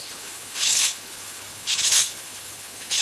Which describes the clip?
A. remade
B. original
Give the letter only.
A